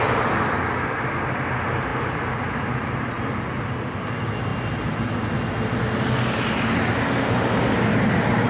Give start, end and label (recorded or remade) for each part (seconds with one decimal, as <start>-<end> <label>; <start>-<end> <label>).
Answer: 0.0-8.5 recorded